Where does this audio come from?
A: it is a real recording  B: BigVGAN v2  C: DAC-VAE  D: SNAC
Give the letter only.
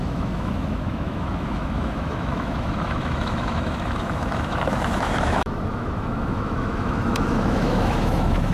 C